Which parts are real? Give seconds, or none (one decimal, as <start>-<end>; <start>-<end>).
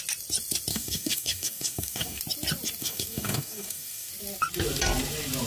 0.0-0.7; 2.2-2.8; 4.1-5.5